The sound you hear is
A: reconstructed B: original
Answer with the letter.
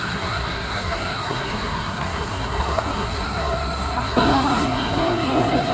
A